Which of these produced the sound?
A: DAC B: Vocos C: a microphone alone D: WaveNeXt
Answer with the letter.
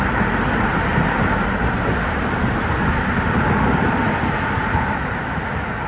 C